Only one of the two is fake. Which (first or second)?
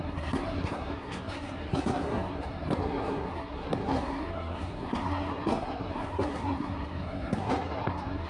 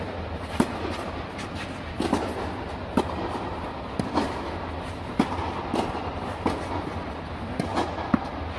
first